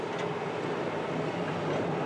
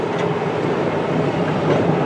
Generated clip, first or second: second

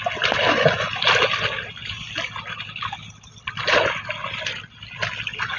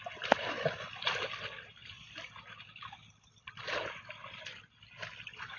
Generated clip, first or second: second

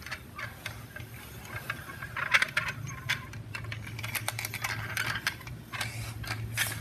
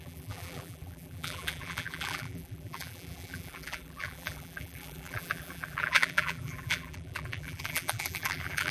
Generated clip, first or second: second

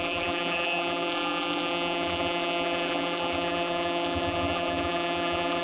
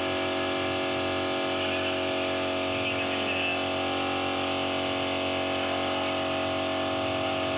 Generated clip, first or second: first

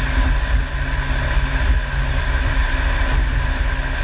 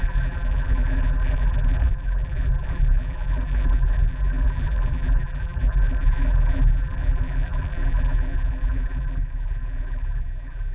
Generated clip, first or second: second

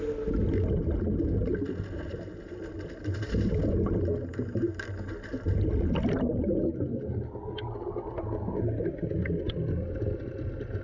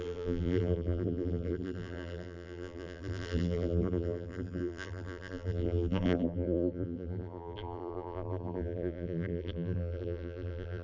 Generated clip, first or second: second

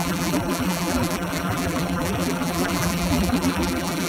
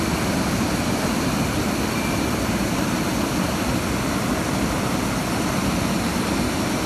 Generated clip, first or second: first